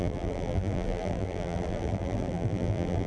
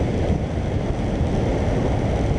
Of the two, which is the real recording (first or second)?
second